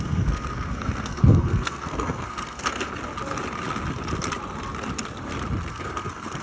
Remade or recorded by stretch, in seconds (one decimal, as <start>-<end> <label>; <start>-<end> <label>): 0.0-2.9 remade; 2.9-5.7 recorded; 5.7-6.4 remade